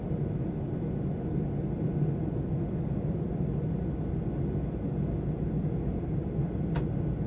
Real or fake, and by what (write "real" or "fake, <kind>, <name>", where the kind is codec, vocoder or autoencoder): real